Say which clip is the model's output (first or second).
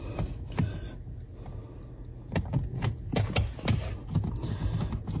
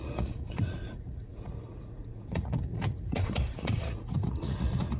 second